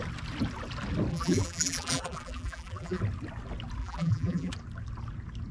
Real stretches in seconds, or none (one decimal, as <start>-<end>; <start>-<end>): 0.0-1.1; 3.0-3.8; 4.5-5.5